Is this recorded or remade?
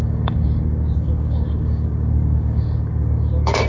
remade